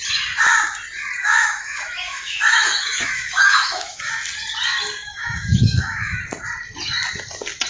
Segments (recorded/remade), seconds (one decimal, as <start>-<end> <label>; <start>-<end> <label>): 0.0-1.2 recorded; 1.2-4.1 remade; 4.1-5.0 recorded; 5.0-6.2 remade; 6.2-7.7 recorded